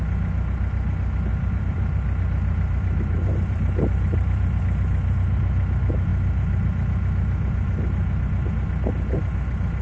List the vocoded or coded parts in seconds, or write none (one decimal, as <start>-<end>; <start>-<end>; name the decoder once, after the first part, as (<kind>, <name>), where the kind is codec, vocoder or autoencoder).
1.3-4.6 (vocoder, BigVGAN v2)